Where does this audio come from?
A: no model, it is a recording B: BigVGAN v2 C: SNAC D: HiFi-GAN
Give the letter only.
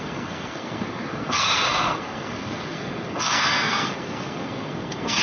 C